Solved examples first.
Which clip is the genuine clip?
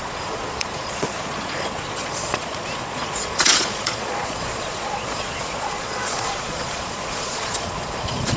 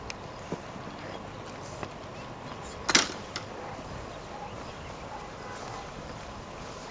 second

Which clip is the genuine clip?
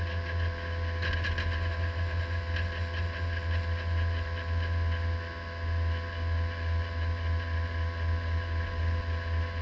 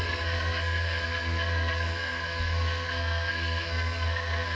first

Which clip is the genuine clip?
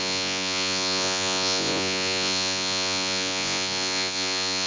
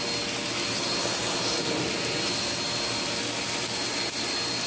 second